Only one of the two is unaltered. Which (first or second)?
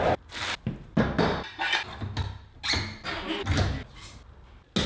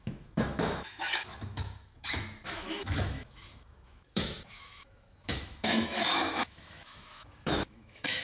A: first